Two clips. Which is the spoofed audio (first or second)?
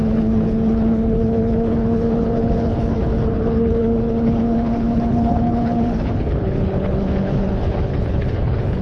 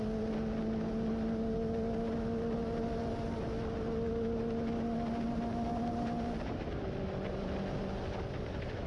first